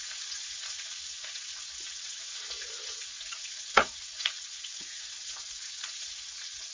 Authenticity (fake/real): fake